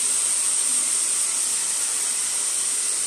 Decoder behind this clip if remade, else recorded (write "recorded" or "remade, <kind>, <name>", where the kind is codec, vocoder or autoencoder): recorded